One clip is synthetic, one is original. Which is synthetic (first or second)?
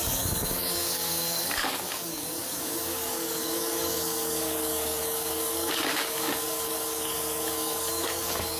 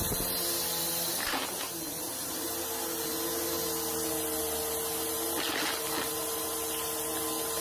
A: first